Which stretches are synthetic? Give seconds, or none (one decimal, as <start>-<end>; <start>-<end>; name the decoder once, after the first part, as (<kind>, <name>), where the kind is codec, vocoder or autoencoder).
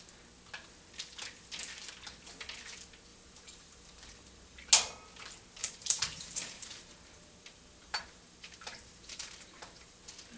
3.1-4.7 (vocoder, BigVGAN v2); 5.6-10.0